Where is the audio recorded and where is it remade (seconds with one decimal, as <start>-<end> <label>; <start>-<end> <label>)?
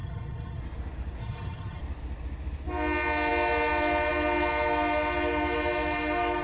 0.0-0.6 remade; 0.6-1.2 recorded; 1.2-1.8 remade; 1.8-6.4 recorded